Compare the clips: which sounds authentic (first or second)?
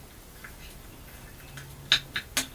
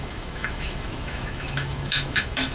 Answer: first